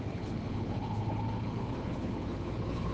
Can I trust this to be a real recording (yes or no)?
no